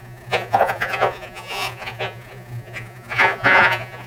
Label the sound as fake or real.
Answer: fake